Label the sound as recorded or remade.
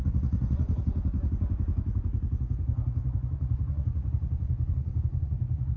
remade